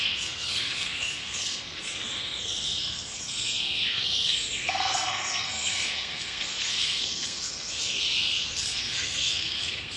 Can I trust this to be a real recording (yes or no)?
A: no